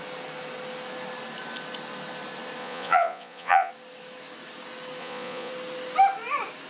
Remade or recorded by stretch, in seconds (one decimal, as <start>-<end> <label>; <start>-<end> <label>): 0.0-2.6 recorded; 2.6-3.7 remade; 3.7-5.0 recorded; 5.0-5.5 remade; 5.5-6.7 recorded